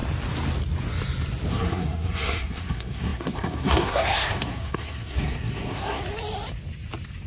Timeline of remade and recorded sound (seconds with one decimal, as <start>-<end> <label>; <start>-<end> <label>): 0.0-1.5 recorded; 1.5-6.0 remade; 6.0-7.3 recorded